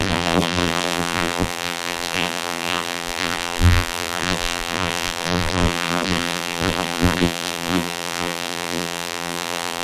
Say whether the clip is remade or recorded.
remade